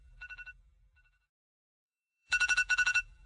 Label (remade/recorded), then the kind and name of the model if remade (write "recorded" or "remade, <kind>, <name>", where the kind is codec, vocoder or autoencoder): remade, vocoder, BigVGAN v2